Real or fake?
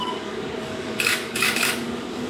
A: fake